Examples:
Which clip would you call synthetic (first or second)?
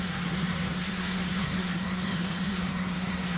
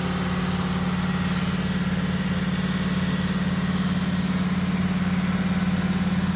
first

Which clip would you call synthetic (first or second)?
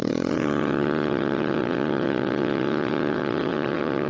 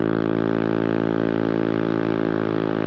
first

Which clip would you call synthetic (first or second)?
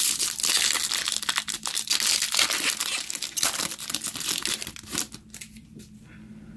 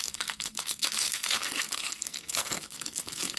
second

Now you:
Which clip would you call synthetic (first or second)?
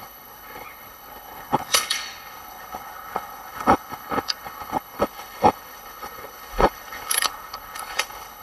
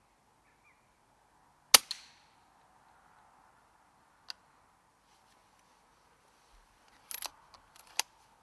first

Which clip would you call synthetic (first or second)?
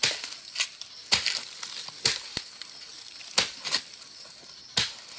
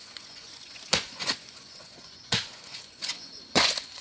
second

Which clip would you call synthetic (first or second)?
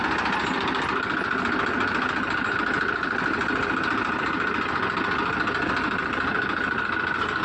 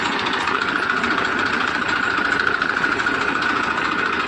second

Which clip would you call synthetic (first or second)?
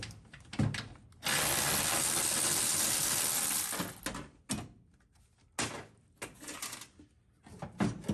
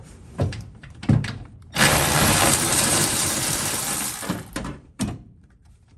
second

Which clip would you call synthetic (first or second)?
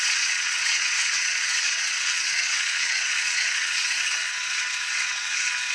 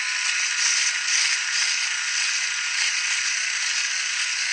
first